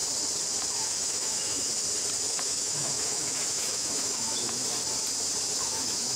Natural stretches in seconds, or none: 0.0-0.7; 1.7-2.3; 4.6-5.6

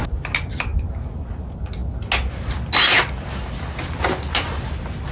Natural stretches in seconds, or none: 0.0-5.1